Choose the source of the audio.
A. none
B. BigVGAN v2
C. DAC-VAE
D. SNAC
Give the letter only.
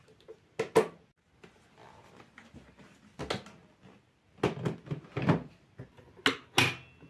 A